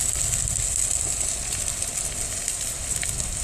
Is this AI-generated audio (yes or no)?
no